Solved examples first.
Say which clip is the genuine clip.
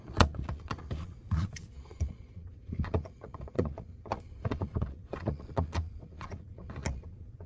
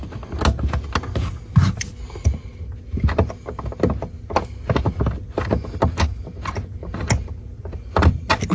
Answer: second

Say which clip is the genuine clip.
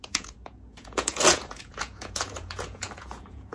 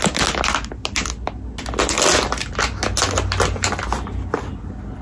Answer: second